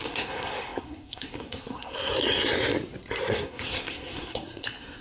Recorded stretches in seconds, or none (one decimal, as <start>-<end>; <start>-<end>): 2.1-3.3